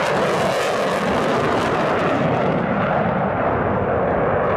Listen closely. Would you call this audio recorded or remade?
recorded